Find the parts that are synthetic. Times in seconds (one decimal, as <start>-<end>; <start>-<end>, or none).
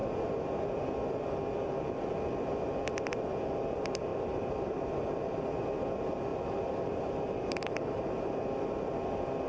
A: 4.1-5.5; 6.3-8.3